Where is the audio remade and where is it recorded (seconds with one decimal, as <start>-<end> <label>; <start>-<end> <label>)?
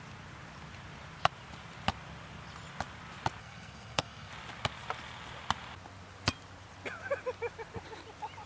0.0-3.4 recorded; 3.4-4.3 remade; 4.3-8.5 recorded